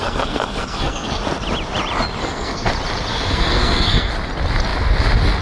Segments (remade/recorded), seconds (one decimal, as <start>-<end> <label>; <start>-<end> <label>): 0.0-1.2 remade; 1.2-2.2 recorded; 2.2-2.7 remade; 2.7-3.1 recorded; 3.1-4.1 remade; 4.1-5.4 recorded